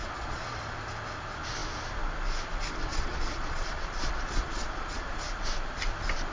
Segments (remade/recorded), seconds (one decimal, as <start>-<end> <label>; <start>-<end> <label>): 0.0-0.6 remade; 0.6-2.9 recorded; 2.9-5.2 remade; 5.2-6.3 recorded